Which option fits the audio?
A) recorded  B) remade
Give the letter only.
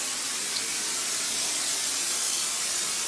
A